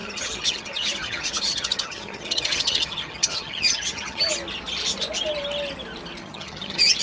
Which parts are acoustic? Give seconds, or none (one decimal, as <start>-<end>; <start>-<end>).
4.2-6.2